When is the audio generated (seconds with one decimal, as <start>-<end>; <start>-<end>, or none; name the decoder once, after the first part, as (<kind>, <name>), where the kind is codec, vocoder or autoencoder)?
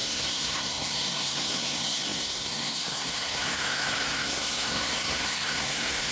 0.0-6.1 (codec, SNAC)